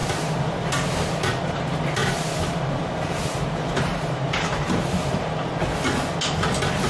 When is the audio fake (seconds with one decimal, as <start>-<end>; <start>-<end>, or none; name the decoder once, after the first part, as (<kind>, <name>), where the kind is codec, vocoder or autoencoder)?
2.0-5.5 (vocoder, BigVGAN v2)